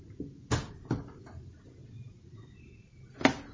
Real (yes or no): yes